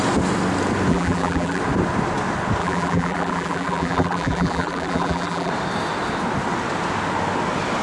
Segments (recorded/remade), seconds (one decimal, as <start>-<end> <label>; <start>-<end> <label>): 0.0-0.9 recorded; 0.9-1.6 remade; 1.6-2.6 recorded; 2.6-5.5 remade; 5.5-7.8 recorded